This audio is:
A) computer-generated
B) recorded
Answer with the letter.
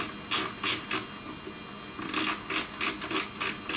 B